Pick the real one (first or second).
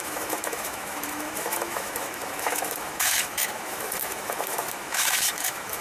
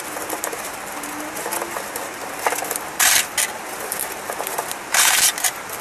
second